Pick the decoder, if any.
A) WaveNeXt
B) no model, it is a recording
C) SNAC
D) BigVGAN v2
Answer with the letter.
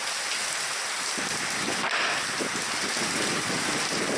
B